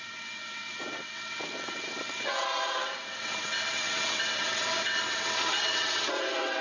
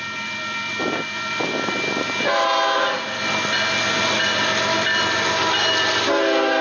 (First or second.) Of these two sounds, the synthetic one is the first